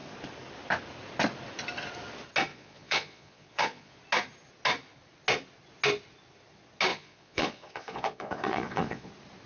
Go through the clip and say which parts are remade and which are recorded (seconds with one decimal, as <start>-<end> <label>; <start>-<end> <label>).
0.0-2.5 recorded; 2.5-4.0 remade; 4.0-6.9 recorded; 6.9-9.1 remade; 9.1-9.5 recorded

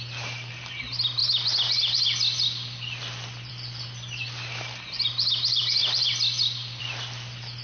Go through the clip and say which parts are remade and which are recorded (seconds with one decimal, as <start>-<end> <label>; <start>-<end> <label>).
0.0-1.2 remade; 1.2-3.5 recorded; 3.5-7.6 remade

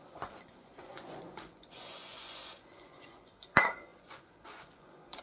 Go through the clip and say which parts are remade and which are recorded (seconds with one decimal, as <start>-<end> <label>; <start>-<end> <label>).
0.0-5.2 remade

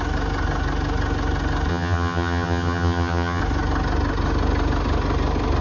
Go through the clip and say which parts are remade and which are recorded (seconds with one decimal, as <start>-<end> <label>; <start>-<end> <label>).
0.0-1.7 recorded; 1.7-3.4 remade; 3.4-5.6 recorded

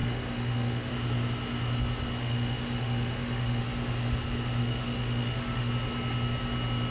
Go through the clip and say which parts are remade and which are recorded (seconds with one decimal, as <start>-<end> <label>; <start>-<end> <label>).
0.0-0.9 remade; 0.9-2.2 recorded; 2.2-3.6 remade; 3.6-4.6 recorded; 4.6-5.7 remade; 5.7-6.9 recorded

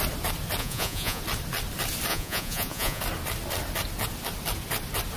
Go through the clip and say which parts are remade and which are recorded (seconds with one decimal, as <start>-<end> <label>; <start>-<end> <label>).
0.0-0.6 recorded; 0.6-1.2 remade; 1.2-2.1 recorded; 2.1-3.0 remade; 3.0-5.2 recorded

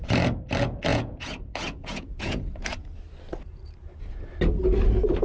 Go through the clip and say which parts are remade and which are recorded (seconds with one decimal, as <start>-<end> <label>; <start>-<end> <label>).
0.0-0.9 recorded; 0.9-2.9 remade; 2.9-5.2 recorded